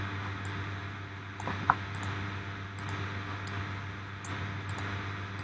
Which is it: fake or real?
real